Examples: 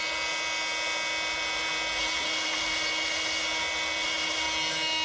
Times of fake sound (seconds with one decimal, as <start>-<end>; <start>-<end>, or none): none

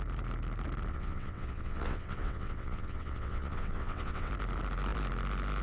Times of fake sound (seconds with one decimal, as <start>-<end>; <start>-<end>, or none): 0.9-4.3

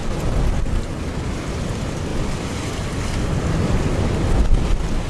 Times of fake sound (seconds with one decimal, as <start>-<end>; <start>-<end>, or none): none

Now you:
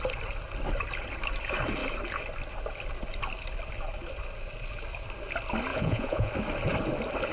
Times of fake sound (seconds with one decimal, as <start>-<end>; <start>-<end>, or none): 5.7-6.3